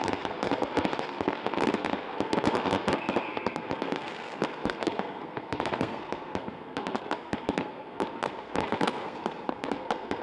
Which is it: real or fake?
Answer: fake